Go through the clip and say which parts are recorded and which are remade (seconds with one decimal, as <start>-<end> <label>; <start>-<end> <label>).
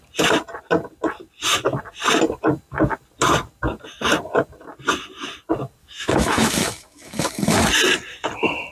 0.0-5.8 recorded; 5.8-7.6 remade; 7.6-8.7 recorded